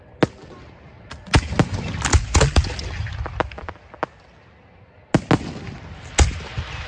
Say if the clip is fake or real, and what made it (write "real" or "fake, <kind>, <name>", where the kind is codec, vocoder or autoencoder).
real